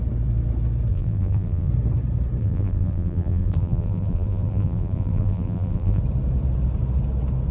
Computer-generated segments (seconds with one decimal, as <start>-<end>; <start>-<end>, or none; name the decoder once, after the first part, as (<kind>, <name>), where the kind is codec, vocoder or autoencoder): 0.9-1.7 (vocoder, BigVGAN v2); 2.4-6.0